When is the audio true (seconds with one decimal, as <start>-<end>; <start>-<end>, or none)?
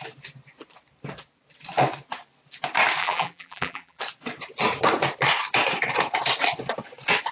0.0-3.0; 4.0-7.3